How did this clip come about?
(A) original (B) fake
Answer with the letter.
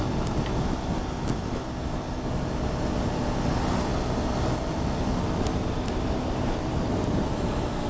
A